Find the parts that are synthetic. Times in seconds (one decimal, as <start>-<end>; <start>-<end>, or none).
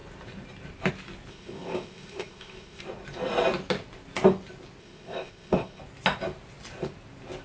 1.3-2.8; 4.8-5.8